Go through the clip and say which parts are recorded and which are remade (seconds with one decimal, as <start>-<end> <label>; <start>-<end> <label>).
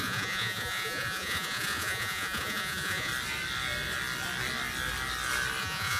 0.0-3.1 remade; 3.1-5.6 recorded; 5.6-6.0 remade